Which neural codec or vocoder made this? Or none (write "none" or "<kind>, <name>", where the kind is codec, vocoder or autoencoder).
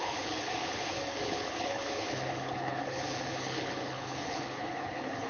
codec, HILCodec